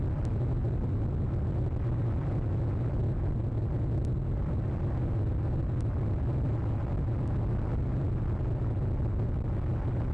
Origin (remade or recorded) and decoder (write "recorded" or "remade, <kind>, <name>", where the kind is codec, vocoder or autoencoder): recorded